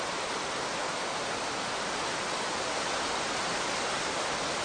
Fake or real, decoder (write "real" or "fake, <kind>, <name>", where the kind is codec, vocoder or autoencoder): real